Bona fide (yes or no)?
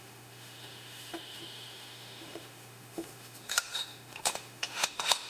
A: no